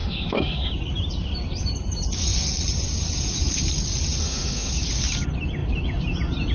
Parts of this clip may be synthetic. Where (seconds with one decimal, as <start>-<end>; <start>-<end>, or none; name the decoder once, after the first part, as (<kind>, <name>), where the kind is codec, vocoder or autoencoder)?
0.0-0.7 (autoencoder, DAC-VAE); 4.2-4.7

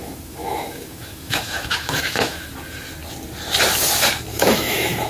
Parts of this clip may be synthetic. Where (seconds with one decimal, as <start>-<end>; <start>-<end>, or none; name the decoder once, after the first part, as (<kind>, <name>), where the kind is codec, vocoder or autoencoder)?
0.0-2.5 (autoencoder, DAC-VAE); 4.3-5.1

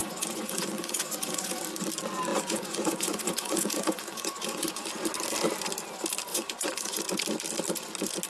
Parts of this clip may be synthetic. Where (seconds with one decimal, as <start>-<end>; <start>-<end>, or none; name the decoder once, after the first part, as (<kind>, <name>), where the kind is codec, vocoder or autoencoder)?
0.0-1.6 (vocoder, Vocos); 2.3-4.8; 6.3-7.0

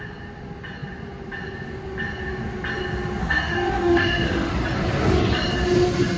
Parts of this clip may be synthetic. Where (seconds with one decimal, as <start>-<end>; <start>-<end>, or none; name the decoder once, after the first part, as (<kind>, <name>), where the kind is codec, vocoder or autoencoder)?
3.2-4.5 (autoencoder, DAC-VAE)